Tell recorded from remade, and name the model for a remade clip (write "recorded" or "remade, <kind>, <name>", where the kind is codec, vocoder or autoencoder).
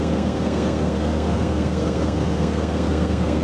remade, codec, SNAC